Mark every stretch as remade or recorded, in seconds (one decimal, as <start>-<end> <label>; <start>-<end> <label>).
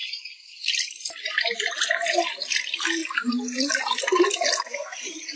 0.0-5.4 recorded